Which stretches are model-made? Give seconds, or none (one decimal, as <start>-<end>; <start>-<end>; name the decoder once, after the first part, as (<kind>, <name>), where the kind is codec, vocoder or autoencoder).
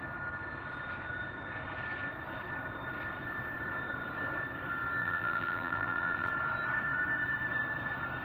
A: 5.0-6.3 (vocoder, BigVGAN v2)